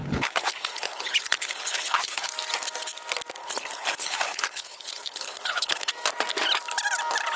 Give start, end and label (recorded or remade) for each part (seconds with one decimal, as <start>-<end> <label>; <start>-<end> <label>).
0.0-2.3 remade; 2.3-3.4 recorded; 3.4-5.9 remade; 5.9-7.4 recorded